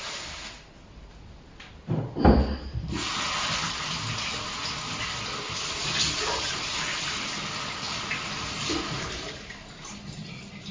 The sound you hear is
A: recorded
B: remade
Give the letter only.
A